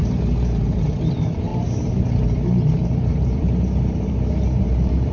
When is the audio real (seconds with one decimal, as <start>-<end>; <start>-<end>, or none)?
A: none